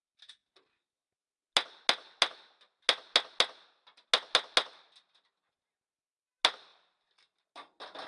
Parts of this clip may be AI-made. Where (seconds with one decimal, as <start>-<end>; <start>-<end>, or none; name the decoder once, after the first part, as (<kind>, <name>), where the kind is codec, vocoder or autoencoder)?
none